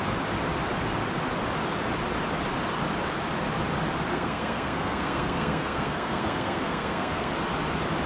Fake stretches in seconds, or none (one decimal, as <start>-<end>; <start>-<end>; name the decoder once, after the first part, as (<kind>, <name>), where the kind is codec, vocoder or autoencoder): 4.1-7.3 (codec, SNAC)